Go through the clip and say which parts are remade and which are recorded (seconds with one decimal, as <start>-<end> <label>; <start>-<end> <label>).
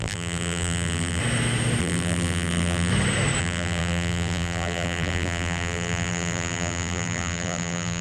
0.0-1.2 remade; 1.2-1.8 recorded; 1.8-2.9 remade; 2.9-3.4 recorded; 3.4-8.0 remade